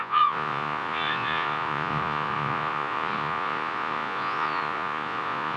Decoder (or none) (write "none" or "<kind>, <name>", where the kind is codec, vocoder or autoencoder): vocoder, Vocos